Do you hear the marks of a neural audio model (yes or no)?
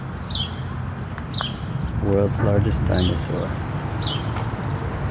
no